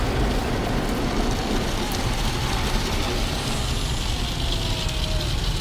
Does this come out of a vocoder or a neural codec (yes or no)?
no